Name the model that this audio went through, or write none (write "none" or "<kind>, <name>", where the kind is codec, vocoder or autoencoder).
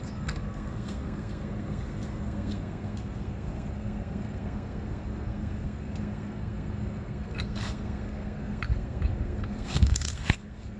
codec, SNAC